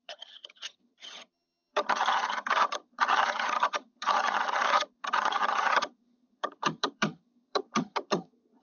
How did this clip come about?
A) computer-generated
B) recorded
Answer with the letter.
A